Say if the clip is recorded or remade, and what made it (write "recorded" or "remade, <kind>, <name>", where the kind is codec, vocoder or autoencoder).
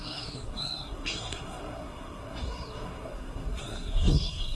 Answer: remade, codec, SNAC